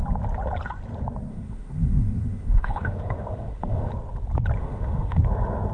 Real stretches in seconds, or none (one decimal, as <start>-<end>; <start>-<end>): 0.0-1.3; 3.9-4.6; 5.2-5.7